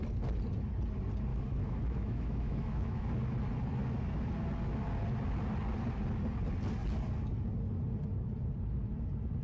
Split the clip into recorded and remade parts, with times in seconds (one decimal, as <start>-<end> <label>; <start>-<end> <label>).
0.0-1.3 recorded; 1.3-3.2 remade; 3.2-9.4 recorded